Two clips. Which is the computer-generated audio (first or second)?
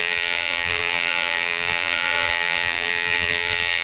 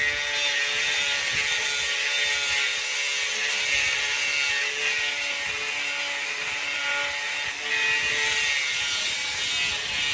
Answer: first